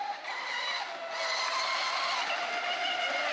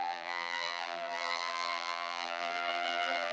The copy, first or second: second